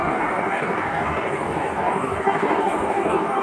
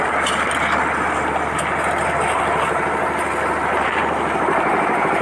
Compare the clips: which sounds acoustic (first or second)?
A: second